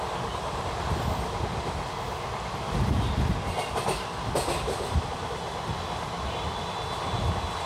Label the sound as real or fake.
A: real